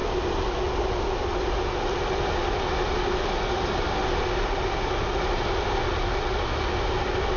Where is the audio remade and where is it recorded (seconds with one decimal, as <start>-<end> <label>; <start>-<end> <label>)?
0.0-7.4 recorded